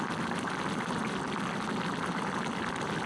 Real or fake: real